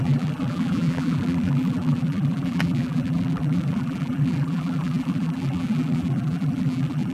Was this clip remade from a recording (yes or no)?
yes